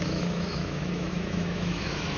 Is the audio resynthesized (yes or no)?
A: yes